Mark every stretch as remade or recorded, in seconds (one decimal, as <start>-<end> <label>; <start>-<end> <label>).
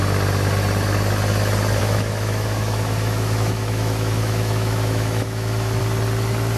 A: 0.0-1.8 recorded; 1.8-5.8 remade; 5.8-6.6 recorded